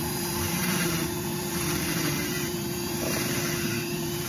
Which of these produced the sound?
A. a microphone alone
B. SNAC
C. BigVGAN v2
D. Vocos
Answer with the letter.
C